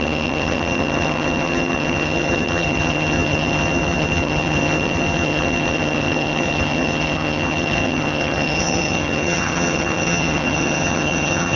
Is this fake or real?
fake